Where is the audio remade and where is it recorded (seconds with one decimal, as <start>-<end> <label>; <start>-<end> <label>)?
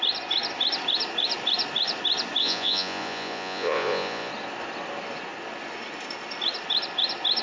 0.0-2.4 recorded; 2.4-4.3 remade; 4.3-7.4 recorded